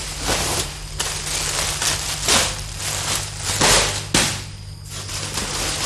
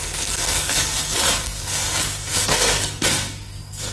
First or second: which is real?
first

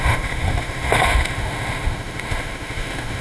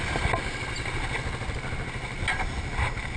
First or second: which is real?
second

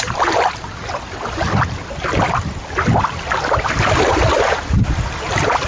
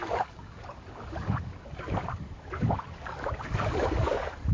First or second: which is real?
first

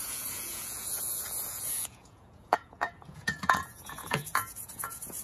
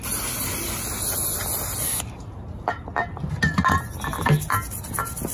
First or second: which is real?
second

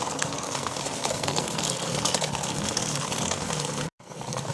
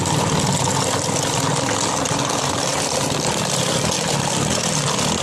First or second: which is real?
second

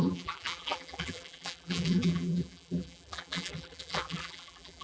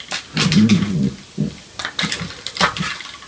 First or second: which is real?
second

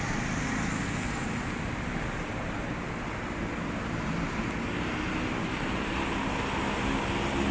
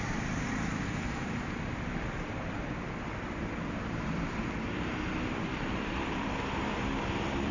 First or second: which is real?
first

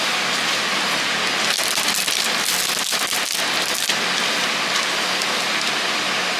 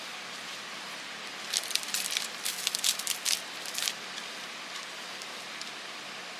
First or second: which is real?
first